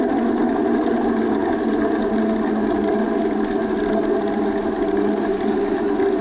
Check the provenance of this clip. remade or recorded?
recorded